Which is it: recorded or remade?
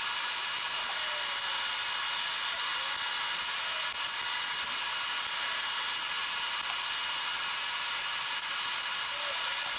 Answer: recorded